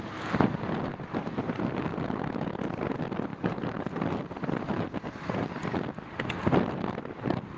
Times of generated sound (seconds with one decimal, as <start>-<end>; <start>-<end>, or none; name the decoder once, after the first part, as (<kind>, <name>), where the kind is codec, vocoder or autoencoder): 3.3-3.9 (vocoder, BigVGAN v2)